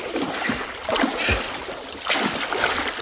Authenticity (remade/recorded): recorded